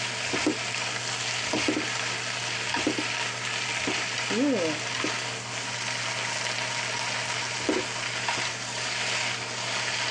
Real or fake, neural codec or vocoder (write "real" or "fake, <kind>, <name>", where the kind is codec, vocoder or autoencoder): real